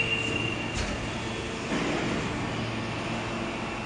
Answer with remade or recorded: recorded